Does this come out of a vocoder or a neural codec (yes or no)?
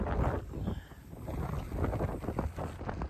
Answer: no